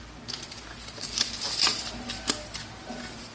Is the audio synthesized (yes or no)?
no